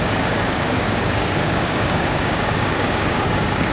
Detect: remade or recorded remade